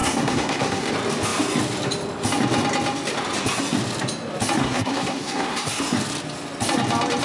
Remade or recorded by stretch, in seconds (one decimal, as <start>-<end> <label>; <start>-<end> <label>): 0.0-0.9 remade; 0.9-4.6 recorded; 4.6-5.8 remade; 5.8-7.2 recorded